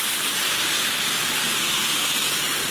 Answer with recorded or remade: remade